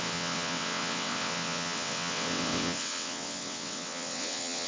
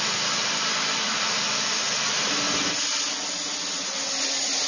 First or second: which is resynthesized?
first